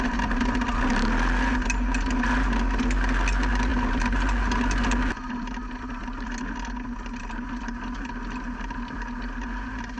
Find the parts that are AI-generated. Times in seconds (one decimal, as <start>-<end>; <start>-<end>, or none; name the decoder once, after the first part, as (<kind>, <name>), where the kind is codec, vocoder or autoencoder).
none